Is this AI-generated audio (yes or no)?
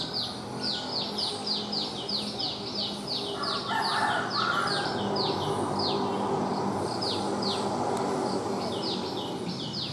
no